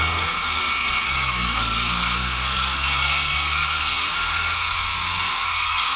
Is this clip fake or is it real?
fake